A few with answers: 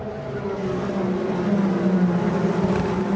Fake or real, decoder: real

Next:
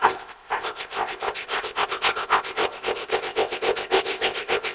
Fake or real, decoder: fake, codec, ZipCodec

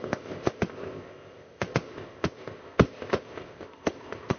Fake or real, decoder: fake, codec, ZipCodec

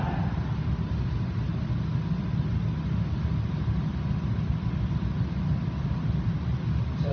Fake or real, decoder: real